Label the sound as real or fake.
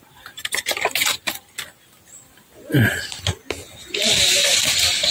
real